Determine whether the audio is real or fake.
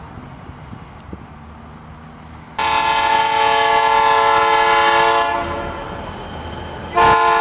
real